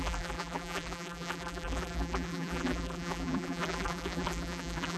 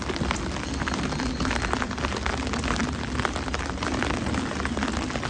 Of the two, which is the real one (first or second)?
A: second